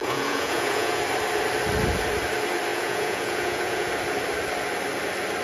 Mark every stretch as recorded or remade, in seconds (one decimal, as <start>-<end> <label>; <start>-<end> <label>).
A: 0.0-1.0 remade; 1.0-2.7 recorded; 2.7-3.9 remade; 3.9-5.4 recorded